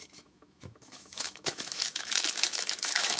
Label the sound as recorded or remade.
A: remade